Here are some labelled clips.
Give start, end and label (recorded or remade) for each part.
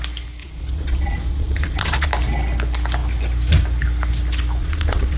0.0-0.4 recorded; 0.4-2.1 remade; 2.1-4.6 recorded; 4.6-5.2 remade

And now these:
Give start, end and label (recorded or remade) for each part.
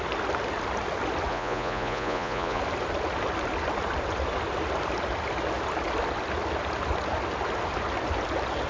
0.0-1.3 recorded; 1.3-2.6 remade; 2.6-8.7 recorded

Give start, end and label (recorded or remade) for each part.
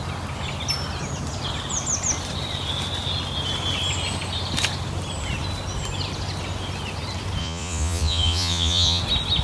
0.0-7.4 recorded; 7.4-9.0 remade; 9.0-9.4 recorded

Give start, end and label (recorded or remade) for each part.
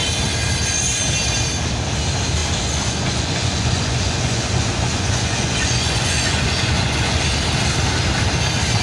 0.0-2.4 recorded; 2.4-7.2 remade; 7.2-8.8 recorded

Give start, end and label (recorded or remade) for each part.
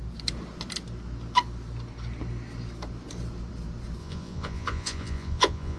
0.0-4.0 recorded; 4.0-5.8 remade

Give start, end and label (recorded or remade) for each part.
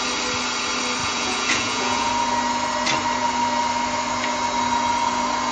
0.0-1.0 recorded; 1.0-2.1 remade; 2.1-5.5 recorded